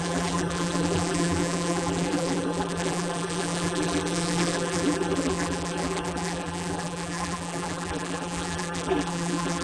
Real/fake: fake